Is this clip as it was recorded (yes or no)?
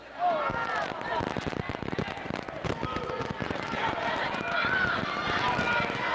yes